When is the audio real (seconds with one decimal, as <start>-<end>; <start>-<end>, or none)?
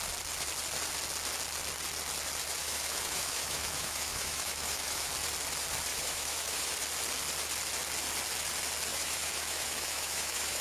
0.0-2.6; 5.1-5.9; 6.7-8.9